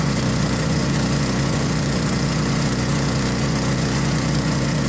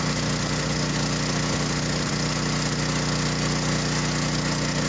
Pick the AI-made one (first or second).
first